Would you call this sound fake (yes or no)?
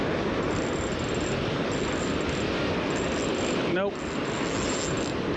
no